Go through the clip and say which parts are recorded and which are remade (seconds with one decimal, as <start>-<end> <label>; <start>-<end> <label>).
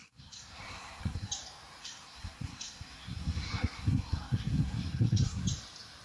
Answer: 0.0-1.3 remade; 1.3-1.8 recorded; 1.8-5.4 remade; 5.4-6.0 recorded